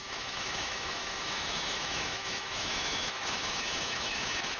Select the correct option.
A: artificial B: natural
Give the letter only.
A